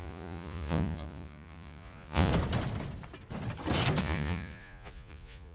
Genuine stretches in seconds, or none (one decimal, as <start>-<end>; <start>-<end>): 2.3-4.0